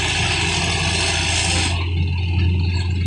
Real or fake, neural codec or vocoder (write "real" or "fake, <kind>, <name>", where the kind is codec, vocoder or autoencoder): real